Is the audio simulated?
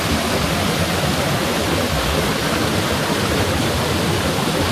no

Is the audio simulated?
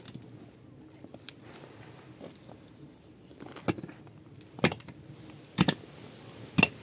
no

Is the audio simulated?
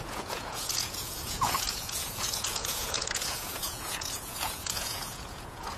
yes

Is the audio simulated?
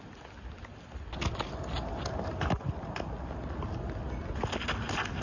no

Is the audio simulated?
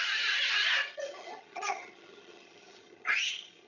yes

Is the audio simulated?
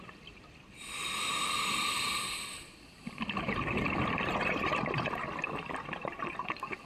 no